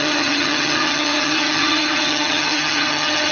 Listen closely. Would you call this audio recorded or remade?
remade